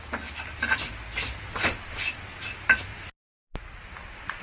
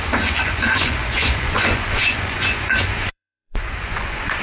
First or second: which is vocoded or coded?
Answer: second